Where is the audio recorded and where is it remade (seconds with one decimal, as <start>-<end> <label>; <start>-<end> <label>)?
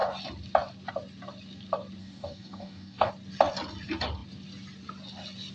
0.0-2.0 recorded; 2.0-3.1 remade; 3.1-5.5 recorded